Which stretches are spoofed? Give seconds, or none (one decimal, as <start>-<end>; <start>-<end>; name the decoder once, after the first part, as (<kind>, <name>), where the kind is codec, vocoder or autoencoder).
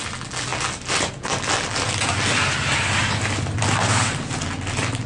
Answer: none